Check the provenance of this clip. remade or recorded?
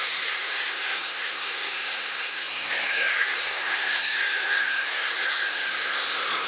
remade